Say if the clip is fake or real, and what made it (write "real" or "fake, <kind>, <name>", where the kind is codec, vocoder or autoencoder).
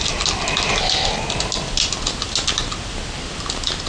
real